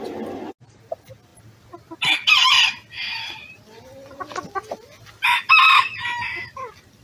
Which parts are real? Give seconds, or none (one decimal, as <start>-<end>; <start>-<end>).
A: 0.0-7.0